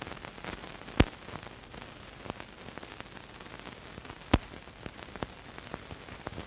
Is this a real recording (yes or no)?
yes